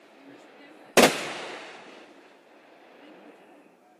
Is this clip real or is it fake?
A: real